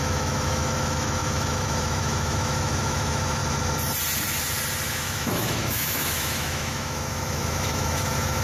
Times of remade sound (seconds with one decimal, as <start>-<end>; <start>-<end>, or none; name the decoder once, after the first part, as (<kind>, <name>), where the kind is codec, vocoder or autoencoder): 0.0-3.4 (autoencoder, DAC-VAE); 4.9-8.4